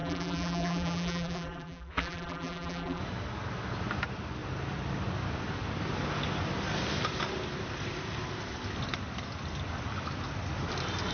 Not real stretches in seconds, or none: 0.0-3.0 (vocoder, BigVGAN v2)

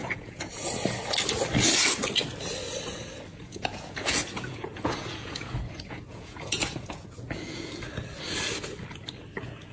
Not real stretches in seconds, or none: 0.0-0.5 (vocoder, Vocos); 3.3-7.8

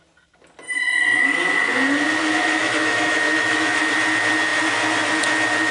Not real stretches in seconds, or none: 2.2-3.8 (autoencoder, DAC-VAE)

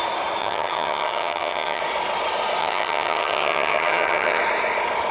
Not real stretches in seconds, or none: 0.4-1.8 (vocoder, HiFi-GAN); 2.6-4.4